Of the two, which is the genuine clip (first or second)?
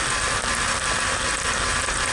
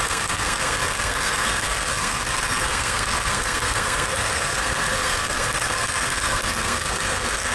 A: first